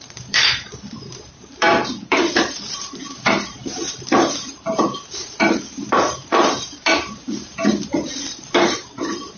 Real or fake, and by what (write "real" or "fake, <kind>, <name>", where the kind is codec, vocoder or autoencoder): fake, vocoder, BigVGAN v2